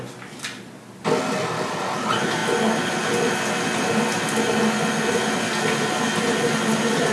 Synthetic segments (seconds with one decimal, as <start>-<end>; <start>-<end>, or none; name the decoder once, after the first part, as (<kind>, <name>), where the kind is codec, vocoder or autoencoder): none